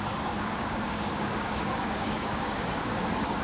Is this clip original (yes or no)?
no